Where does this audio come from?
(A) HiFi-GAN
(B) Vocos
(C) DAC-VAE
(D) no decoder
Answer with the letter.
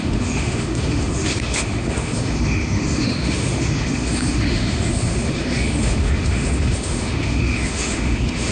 C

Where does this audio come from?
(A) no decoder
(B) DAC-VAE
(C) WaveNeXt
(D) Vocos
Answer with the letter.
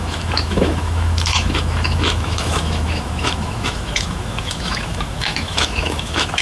B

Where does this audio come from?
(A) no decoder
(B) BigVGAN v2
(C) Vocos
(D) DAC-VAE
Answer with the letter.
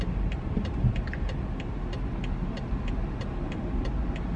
A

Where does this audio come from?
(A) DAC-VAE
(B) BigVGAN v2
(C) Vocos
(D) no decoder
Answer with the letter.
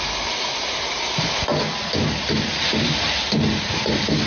D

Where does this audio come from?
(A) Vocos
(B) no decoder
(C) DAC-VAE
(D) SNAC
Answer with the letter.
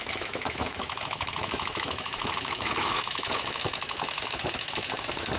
C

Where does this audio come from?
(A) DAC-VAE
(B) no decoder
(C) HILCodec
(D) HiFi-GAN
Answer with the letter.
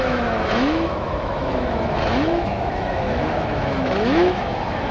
A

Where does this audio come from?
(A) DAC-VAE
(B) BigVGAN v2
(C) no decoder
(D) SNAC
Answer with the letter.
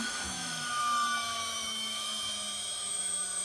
A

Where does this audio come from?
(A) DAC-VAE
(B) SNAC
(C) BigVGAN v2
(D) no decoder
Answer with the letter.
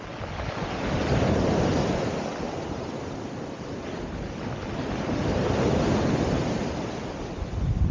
D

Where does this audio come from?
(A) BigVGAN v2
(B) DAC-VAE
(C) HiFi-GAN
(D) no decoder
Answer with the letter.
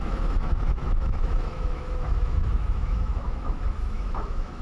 B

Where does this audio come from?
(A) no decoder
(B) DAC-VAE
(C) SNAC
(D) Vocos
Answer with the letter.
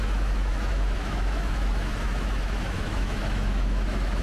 B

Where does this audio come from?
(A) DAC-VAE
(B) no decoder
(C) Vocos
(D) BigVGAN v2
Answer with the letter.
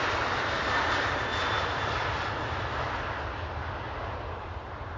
B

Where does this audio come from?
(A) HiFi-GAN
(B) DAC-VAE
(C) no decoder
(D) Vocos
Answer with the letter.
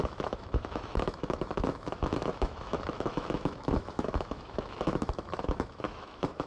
B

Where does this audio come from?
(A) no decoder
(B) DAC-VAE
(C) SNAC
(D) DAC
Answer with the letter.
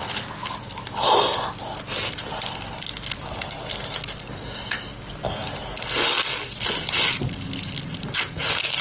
A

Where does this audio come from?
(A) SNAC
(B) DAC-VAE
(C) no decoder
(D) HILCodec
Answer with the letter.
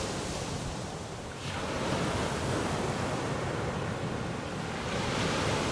C